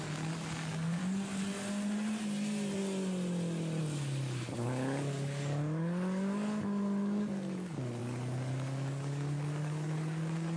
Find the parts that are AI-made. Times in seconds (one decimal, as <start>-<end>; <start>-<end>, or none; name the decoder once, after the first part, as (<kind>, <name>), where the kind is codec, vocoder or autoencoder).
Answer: 0.0-1.0 (codec, DAC); 3.8-10.6